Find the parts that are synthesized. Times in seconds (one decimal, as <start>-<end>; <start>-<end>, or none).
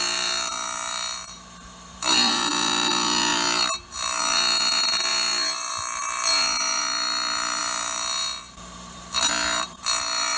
0.0-10.4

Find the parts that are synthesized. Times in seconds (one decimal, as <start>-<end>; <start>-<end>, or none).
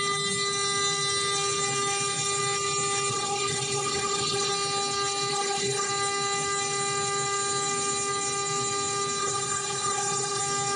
3.1-4.5; 5.3-5.9; 9.2-10.4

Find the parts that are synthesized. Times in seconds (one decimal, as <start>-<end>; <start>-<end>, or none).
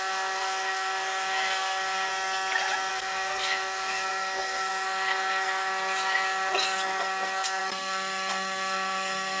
0.0-2.1; 2.9-9.4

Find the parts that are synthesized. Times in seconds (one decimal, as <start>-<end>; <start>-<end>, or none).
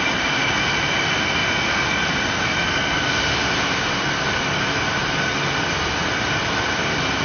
none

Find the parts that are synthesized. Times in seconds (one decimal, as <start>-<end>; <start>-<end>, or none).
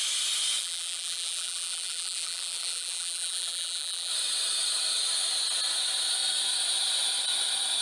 0.6-4.1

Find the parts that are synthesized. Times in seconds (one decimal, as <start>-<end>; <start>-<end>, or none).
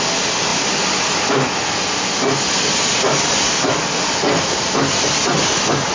none